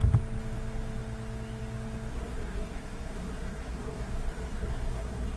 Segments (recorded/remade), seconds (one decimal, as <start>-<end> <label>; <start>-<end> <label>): 0.0-2.1 recorded; 2.1-5.4 remade